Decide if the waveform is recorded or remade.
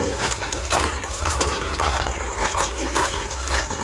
remade